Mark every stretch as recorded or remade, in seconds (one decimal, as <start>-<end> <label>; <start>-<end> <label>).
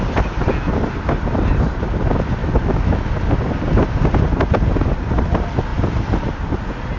0.0-2.4 recorded; 2.4-3.1 remade; 3.1-7.0 recorded